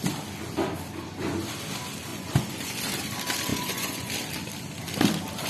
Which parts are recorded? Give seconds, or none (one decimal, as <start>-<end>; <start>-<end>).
0.0-2.1; 2.8-3.5; 4.1-5.5